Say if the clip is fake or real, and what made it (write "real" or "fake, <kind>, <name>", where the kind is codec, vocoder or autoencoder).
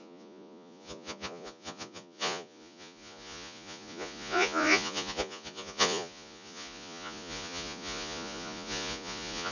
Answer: fake, vocoder, Vocos